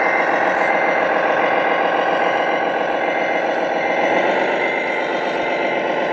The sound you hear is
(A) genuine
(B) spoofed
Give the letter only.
A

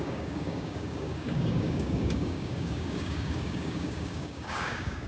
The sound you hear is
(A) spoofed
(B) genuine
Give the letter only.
A